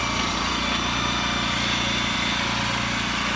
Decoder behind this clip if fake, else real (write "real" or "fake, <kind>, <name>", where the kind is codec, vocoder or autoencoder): real